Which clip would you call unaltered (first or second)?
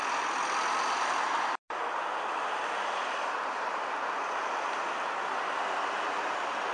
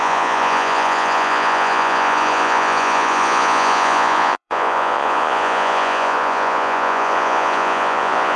first